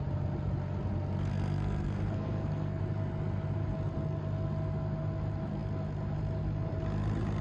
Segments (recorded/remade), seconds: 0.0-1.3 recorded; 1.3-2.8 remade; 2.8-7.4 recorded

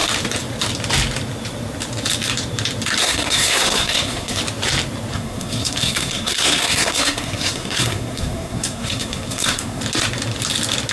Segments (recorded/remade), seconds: 0.0-3.0 recorded; 3.0-4.4 remade; 4.4-5.1 recorded; 5.1-9.8 remade; 9.8-10.9 recorded

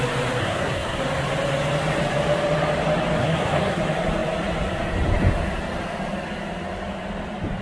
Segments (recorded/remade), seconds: 0.0-0.4 recorded; 0.4-1.0 remade; 1.0-3.2 recorded; 3.2-3.8 remade; 3.8-7.6 recorded

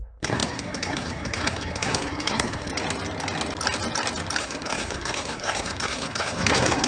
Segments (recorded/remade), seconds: 0.0-2.7 remade; 2.7-4.4 recorded; 4.4-6.9 remade

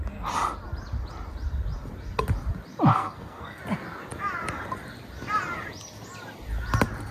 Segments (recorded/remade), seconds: 0.0-2.9 recorded; 2.9-3.6 remade; 3.6-7.1 recorded

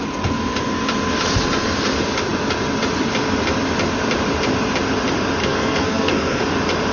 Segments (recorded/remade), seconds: 0.0-5.4 recorded; 5.4-6.4 remade; 6.4-6.9 recorded